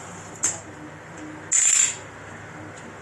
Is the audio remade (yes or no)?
no